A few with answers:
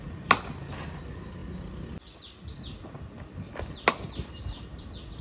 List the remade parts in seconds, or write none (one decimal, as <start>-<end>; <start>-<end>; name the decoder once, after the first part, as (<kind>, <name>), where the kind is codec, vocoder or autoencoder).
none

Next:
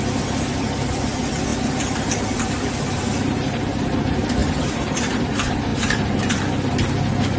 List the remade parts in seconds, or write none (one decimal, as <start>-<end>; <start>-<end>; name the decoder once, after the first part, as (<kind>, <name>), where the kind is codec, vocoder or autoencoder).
4.4-5.2 (vocoder, BigVGAN v2); 5.7-6.3

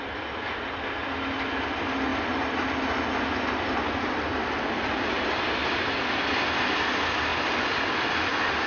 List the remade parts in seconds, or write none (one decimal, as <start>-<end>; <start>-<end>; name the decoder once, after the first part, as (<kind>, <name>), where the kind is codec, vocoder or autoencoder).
none

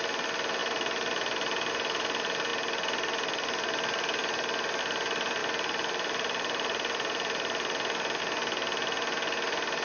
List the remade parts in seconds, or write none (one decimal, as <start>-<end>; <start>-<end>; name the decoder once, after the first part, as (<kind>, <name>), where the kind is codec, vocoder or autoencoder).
0.6-1.7 (vocoder, BigVGAN v2); 5.4-8.2

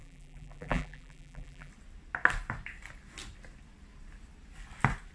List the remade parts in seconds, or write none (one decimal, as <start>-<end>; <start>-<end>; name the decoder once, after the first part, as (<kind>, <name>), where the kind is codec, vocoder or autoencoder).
0.0-1.7 (vocoder, BigVGAN v2)

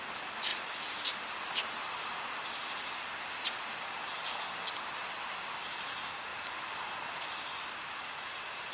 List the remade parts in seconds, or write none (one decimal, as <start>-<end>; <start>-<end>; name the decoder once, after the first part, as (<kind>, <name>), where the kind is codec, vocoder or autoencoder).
none

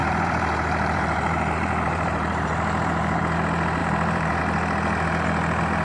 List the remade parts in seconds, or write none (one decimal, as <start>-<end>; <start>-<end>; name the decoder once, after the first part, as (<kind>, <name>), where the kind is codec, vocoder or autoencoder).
0.0-3.2 (vocoder, BigVGAN v2); 3.8-4.4

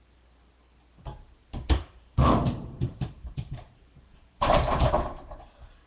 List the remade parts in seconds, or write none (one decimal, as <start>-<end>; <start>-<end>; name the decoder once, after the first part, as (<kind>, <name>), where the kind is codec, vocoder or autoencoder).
1.4-4.9 (vocoder, BigVGAN v2)